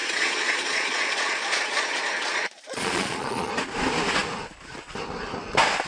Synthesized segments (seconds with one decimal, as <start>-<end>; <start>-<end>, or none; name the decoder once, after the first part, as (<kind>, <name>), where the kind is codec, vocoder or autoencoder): 0.0-3.5 (vocoder, Vocos)